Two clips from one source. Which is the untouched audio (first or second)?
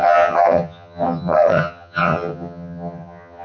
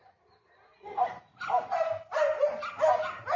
second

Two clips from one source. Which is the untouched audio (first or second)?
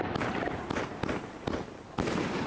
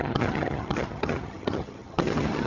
first